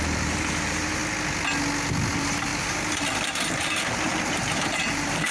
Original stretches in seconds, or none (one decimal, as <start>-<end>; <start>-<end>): 1.0-2.1; 2.5-3.5